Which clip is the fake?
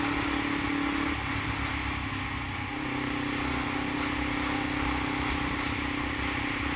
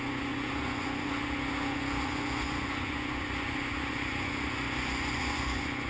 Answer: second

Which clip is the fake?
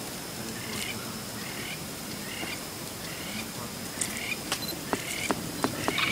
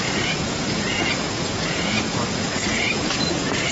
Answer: second